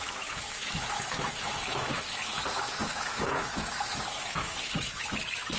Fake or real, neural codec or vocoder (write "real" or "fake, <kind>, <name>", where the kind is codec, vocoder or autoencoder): fake, autoencoder, DAC-VAE